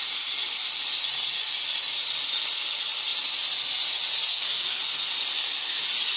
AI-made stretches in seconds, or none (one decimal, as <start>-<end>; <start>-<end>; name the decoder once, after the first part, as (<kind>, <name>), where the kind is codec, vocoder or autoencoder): 4.3-4.8 (codec, SNAC)